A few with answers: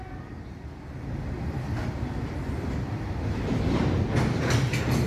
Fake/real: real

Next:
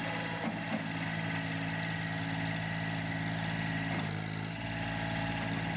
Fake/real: real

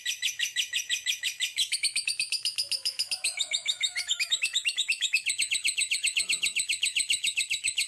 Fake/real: fake